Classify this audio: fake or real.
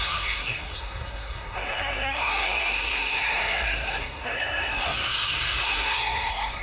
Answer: fake